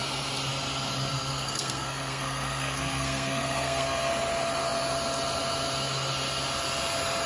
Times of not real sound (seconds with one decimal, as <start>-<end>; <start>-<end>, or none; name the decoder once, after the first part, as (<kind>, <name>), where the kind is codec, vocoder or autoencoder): 1.1-4.1 (codec, SNAC)